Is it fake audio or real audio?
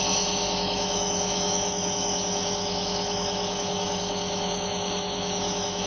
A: fake